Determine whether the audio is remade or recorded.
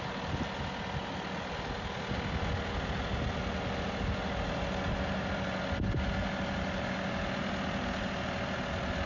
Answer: recorded